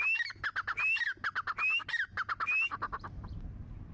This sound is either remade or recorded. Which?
recorded